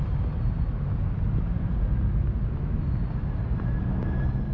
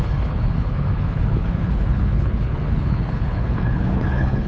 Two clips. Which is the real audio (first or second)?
first